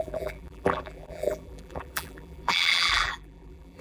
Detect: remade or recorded remade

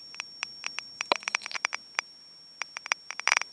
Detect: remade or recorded remade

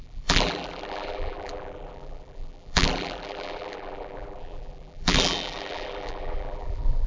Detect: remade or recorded remade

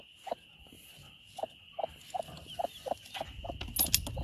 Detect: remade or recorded recorded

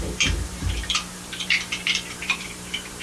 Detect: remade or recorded remade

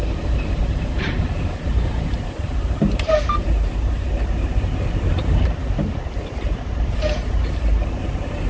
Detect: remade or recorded remade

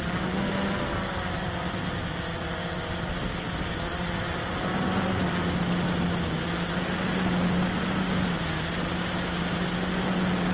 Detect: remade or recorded recorded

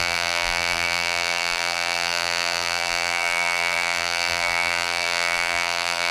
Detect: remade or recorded remade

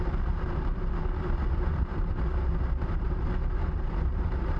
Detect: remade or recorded remade